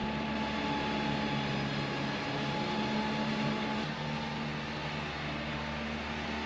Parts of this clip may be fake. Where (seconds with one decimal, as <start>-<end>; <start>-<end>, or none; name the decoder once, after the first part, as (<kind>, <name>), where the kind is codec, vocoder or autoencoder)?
none